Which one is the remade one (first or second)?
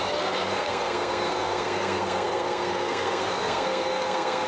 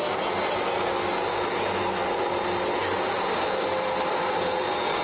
first